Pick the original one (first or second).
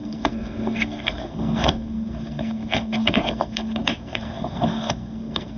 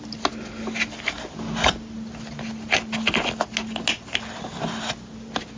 second